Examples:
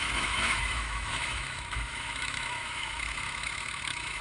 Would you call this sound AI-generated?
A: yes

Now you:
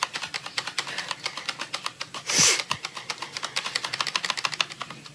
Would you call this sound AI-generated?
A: no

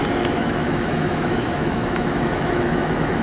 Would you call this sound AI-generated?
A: yes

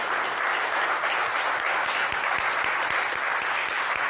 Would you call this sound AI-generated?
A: no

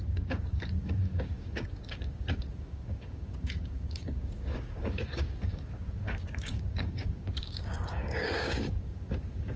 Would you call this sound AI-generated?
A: yes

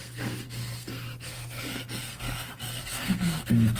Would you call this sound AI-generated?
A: yes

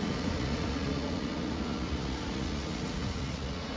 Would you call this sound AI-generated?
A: yes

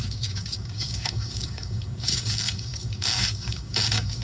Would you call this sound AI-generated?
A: yes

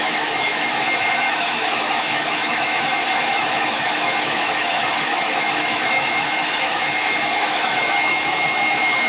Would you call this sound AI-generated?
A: yes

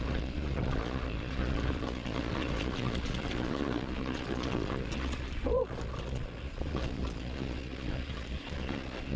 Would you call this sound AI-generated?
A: yes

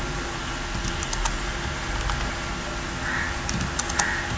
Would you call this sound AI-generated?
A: no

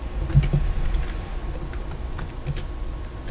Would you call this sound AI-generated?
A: no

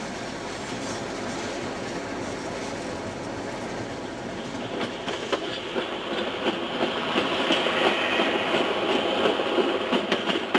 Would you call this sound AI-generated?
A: no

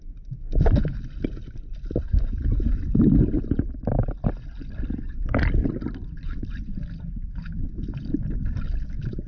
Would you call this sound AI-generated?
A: no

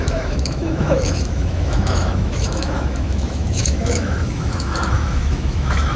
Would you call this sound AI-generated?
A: yes